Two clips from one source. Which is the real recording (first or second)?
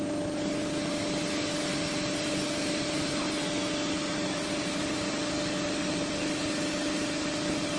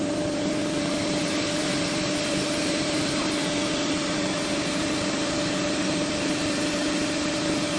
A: first